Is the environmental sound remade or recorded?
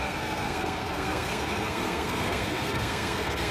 remade